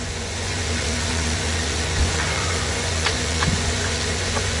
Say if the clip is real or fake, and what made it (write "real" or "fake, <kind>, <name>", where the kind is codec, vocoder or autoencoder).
fake, vocoder, Vocos